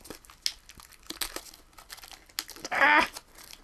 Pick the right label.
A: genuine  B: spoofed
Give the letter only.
A